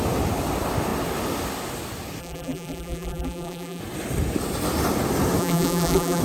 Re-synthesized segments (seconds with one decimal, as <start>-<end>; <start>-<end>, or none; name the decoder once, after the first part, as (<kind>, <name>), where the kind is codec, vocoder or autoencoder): 2.2-3.8 (vocoder, BigVGAN v2); 5.4-6.2